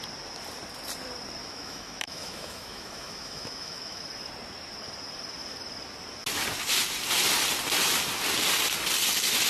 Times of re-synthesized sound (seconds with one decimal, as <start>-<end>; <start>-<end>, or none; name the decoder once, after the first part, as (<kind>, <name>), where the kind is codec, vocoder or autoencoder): 1.4-4.0 (autoencoder, DAC-VAE)